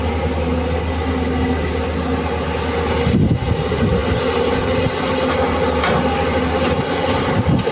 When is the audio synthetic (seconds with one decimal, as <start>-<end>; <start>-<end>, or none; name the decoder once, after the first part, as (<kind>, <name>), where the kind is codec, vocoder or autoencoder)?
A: none

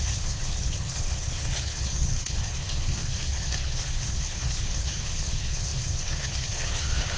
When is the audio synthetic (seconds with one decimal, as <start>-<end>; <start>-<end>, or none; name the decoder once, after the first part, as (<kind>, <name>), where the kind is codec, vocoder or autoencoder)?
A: 0.0-7.2 (codec, HILCodec)